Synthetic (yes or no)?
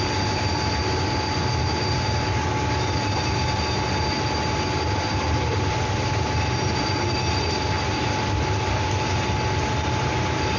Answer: no